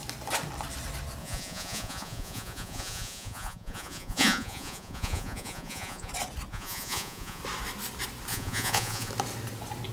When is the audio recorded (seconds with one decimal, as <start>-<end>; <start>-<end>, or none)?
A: 0.0-1.2; 6.1-6.5; 7.4-8.3; 9.1-9.9